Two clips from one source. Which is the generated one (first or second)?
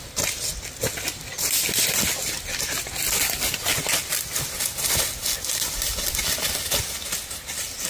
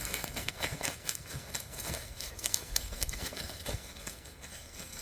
second